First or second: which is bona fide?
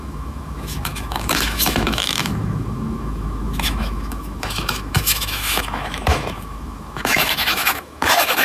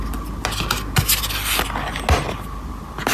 second